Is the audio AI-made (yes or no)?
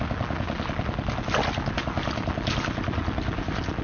no